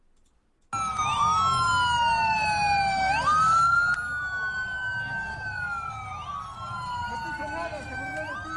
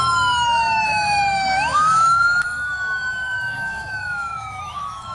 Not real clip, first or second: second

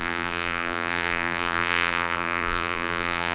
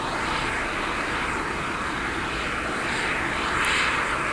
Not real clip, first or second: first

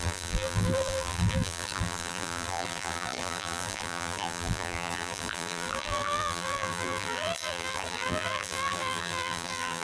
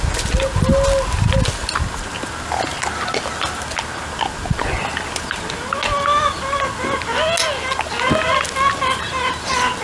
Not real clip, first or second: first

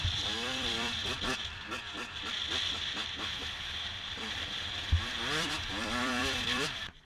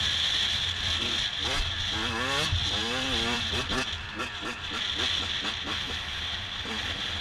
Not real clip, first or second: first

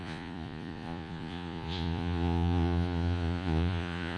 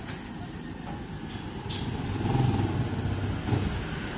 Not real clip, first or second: first